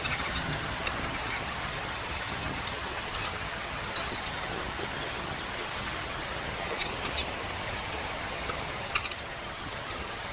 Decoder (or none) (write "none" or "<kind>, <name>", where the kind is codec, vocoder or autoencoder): vocoder, HiFi-GAN